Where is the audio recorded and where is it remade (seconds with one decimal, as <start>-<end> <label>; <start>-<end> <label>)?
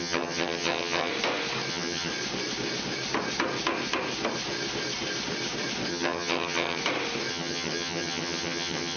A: 0.0-1.1 remade; 1.1-1.7 recorded; 1.7-2.1 remade; 2.1-5.9 recorded; 5.9-6.8 remade; 6.8-7.3 recorded; 7.3-9.0 remade